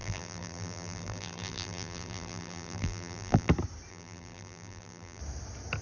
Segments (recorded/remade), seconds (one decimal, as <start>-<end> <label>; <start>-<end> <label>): 0.0-3.5 remade; 3.5-3.9 recorded; 3.9-5.2 remade; 5.2-5.8 recorded